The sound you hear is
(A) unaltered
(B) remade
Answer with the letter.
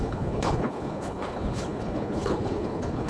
B